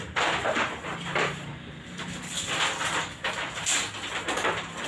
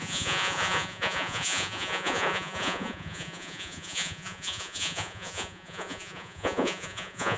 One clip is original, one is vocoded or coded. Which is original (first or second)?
first